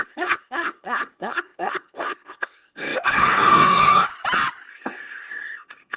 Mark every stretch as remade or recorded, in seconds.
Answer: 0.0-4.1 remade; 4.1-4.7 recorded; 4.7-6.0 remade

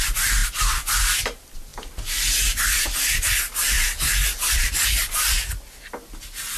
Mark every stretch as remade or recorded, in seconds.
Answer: 0.0-6.6 recorded

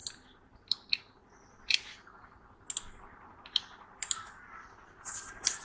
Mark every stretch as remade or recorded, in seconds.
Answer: 0.0-5.6 recorded

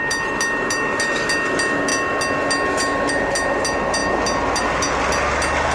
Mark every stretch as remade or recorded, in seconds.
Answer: 0.0-5.7 recorded

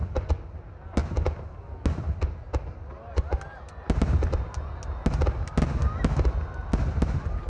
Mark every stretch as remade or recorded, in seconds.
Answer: 0.0-7.5 recorded

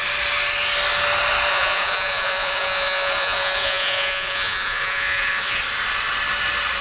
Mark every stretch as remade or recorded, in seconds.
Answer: 0.0-1.5 recorded; 1.5-5.6 remade; 5.6-6.8 recorded

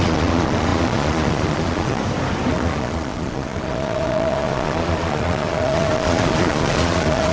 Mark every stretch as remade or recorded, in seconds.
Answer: 0.0-2.0 remade; 2.0-2.5 recorded; 2.5-7.3 remade